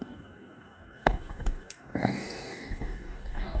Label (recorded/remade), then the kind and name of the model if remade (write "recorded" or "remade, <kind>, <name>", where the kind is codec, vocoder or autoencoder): remade, codec, DAC